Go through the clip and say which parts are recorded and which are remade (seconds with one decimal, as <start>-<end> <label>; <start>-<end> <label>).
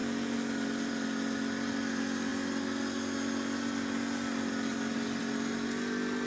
0.0-6.3 recorded